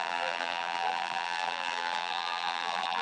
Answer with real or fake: fake